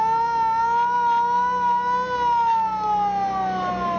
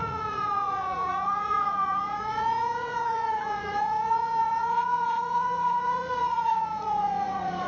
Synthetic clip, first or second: second